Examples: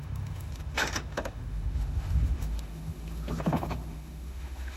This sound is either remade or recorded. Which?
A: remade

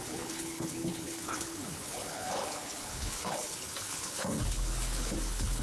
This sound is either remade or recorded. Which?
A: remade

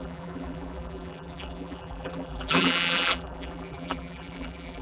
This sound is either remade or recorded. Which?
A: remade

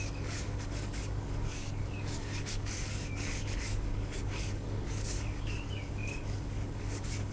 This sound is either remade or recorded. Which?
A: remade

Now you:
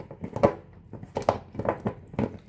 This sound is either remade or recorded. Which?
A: recorded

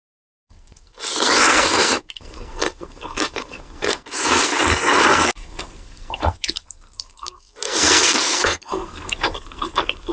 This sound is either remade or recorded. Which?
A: remade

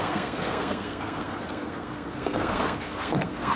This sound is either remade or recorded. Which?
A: remade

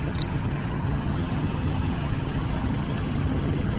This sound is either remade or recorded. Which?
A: remade